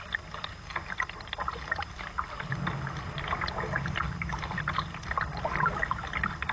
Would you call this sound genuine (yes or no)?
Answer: yes